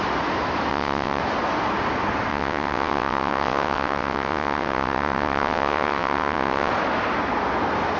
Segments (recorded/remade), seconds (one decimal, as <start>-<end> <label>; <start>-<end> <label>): 0.0-0.7 recorded; 0.7-1.2 remade; 1.2-2.3 recorded; 2.3-6.7 remade; 6.7-8.0 recorded